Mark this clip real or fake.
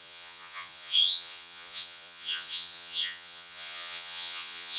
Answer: fake